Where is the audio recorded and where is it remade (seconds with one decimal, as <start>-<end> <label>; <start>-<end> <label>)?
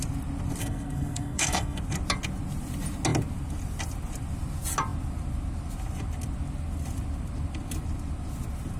0.0-0.6 recorded; 0.6-1.8 remade; 1.8-8.8 recorded